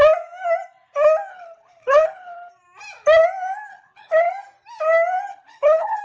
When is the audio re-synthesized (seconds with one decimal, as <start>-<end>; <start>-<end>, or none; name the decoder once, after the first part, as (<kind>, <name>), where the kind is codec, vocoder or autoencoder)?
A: 1.3-2.5 (codec, HILCodec); 3.7-4.3; 5.3-6.0